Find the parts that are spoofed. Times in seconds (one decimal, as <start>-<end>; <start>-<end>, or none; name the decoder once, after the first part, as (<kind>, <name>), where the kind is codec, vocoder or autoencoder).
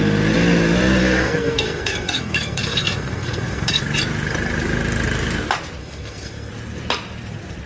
1.0-3.8 (codec, SNAC); 5.8-6.5